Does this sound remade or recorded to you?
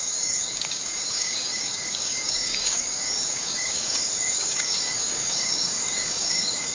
remade